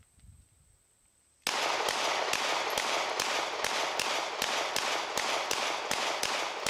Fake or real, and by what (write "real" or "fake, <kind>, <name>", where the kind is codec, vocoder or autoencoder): real